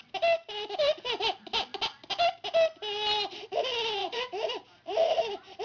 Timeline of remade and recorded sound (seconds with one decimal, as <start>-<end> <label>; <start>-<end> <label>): 0.0-4.0 recorded; 4.0-5.6 remade